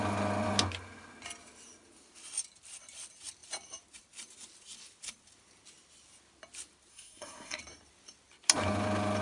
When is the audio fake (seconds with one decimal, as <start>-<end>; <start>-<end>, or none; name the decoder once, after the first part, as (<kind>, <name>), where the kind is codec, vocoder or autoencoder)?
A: 6.9-7.6 (codec, SNAC)